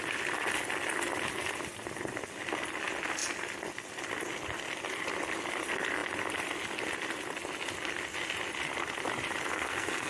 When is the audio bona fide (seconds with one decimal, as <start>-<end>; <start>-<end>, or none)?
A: 0.0-9.5